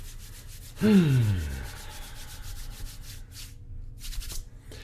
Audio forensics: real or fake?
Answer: real